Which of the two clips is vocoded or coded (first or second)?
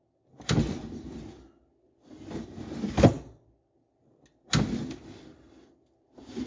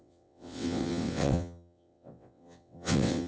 second